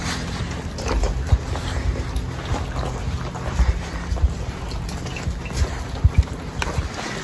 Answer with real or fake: real